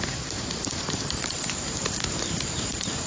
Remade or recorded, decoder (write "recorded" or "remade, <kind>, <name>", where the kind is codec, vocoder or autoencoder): remade, vocoder, BigVGAN v2